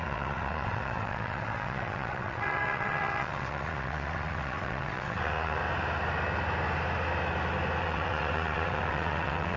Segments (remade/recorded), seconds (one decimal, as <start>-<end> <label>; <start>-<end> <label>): 0.0-5.6 remade; 5.6-7.8 recorded; 7.8-9.6 remade